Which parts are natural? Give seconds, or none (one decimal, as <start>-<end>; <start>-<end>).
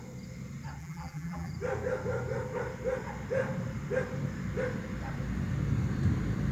0.0-0.8; 1.5-6.5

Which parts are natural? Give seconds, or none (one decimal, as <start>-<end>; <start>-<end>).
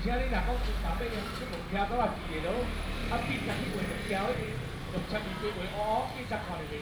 0.0-3.0; 4.9-6.8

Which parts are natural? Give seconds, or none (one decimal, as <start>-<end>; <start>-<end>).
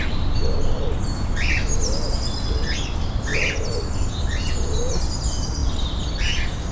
0.0-6.7